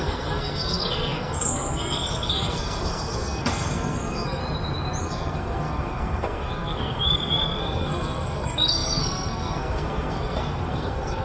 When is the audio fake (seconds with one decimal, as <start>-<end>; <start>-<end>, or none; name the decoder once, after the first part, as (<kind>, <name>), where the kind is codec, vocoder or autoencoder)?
0.0-4.4 (codec, SNAC); 5.0-11.2